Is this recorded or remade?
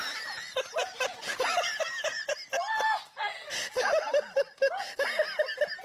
recorded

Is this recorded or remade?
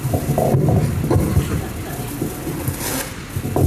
recorded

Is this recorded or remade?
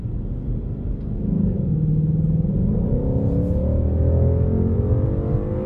recorded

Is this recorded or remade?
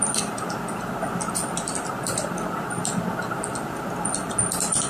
recorded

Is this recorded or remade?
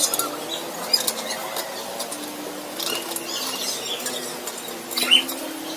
recorded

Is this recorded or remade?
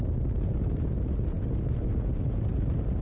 recorded